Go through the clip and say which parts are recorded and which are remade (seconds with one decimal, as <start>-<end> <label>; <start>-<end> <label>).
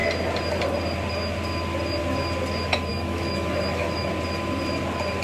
0.0-2.9 recorded; 2.9-4.1 remade; 4.1-5.2 recorded